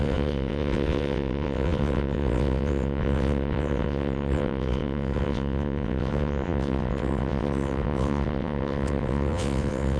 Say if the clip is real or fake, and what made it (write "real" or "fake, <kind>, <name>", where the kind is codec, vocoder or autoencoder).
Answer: fake, vocoder, WaveNeXt